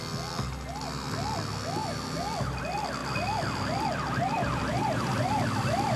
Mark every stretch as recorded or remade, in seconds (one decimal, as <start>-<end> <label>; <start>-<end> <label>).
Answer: 0.0-1.8 recorded; 1.8-2.6 remade; 2.6-3.0 recorded; 3.0-6.0 remade